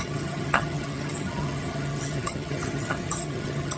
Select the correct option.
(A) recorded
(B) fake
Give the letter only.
B